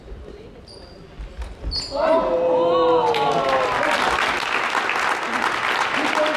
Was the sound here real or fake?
real